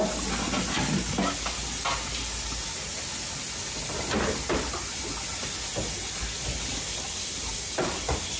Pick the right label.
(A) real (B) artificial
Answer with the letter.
A